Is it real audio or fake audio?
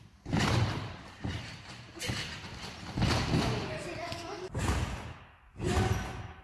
real